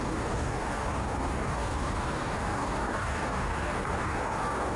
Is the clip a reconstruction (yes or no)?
yes